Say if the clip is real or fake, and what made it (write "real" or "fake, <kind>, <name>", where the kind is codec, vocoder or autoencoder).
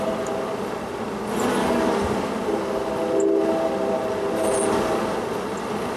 real